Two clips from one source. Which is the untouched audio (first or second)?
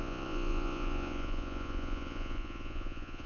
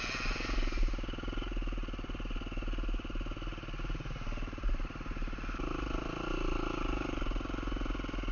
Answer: second